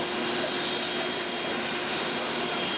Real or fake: real